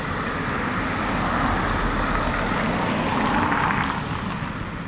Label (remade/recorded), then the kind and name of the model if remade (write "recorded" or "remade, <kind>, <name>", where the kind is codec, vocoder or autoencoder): recorded